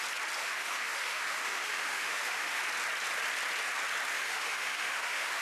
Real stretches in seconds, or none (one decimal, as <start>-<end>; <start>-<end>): 0.0-0.4; 2.6-4.1